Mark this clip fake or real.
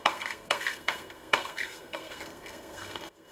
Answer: fake